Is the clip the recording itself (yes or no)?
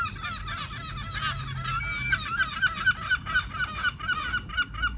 yes